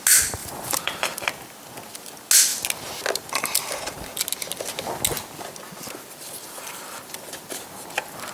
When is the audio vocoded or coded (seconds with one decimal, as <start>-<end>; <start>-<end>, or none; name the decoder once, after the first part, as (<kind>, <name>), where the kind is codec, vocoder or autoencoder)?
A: 0.4-1.3 (vocoder, BigVGAN v2)